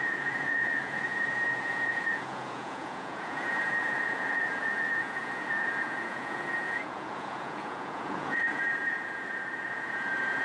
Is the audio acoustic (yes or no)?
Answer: no